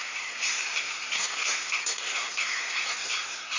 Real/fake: fake